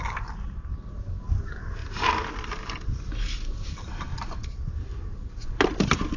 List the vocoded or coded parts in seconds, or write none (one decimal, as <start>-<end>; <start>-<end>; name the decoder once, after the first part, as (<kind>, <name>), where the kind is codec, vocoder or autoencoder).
0.0-6.2 (vocoder, BigVGAN v2)